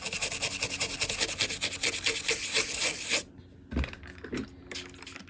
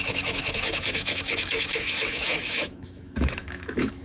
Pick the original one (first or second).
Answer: first